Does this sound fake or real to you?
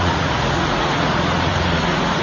fake